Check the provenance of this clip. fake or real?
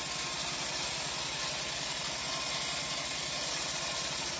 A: real